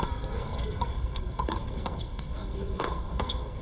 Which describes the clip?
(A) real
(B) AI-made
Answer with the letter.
B